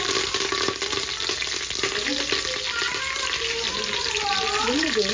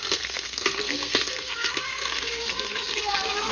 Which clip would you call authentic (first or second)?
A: first